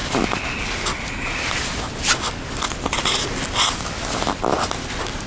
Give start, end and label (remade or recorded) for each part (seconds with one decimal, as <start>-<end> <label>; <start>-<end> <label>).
0.0-5.3 recorded